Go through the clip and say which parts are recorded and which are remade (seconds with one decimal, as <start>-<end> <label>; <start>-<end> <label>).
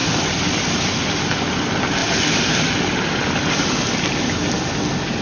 0.0-5.2 recorded